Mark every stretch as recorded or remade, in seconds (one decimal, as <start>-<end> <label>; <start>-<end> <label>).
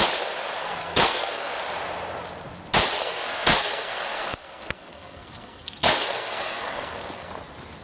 0.0-0.6 recorded; 0.6-1.6 remade; 1.6-2.9 recorded; 2.9-7.3 remade; 7.3-7.8 recorded